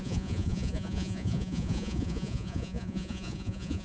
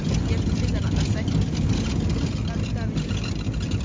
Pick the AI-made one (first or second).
first